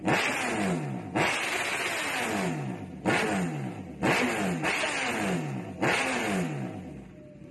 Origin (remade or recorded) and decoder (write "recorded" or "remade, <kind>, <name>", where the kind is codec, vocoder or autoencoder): recorded